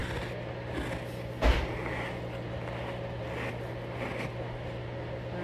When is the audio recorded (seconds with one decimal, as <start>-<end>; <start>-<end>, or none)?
0.0-5.4

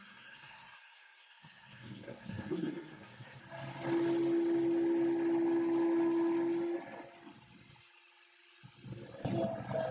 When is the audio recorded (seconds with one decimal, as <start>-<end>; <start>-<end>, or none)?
3.4-9.9

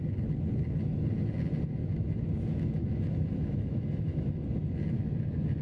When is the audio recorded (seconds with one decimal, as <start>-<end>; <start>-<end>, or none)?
0.0-1.8; 4.4-5.6